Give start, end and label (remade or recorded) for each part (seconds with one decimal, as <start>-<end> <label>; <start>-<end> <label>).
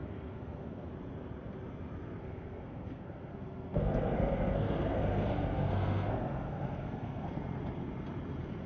0.0-0.9 remade; 0.9-2.2 recorded; 2.2-7.3 remade; 7.3-8.7 recorded